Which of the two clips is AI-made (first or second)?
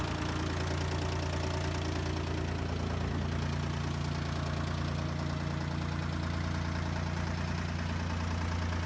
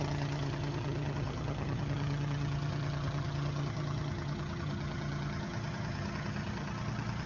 second